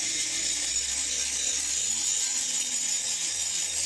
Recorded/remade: recorded